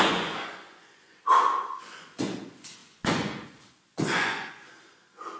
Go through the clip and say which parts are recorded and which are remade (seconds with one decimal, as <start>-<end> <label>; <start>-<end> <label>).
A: 0.0-5.4 remade

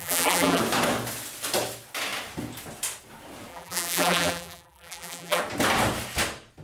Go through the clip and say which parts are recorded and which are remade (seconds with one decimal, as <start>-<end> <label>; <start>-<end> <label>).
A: 0.0-0.6 remade; 0.6-3.5 recorded; 3.5-5.4 remade; 5.4-6.6 recorded